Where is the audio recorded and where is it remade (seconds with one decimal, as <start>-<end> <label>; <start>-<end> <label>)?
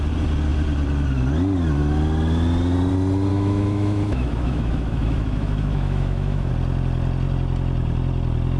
0.0-3.3 recorded; 3.3-6.5 remade; 6.5-8.6 recorded